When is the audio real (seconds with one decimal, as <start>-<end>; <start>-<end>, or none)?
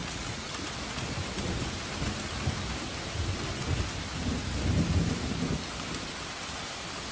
0.5-7.1